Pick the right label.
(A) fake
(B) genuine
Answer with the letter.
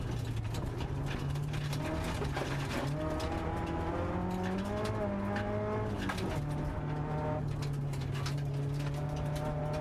B